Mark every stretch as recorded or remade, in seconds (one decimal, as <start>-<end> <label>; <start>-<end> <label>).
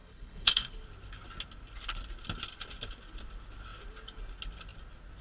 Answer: 0.0-0.8 remade; 0.8-5.2 recorded